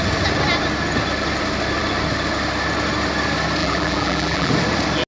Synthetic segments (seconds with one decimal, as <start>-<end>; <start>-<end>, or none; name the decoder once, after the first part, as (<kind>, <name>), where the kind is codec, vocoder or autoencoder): 3.6-4.5 (vocoder, BigVGAN v2)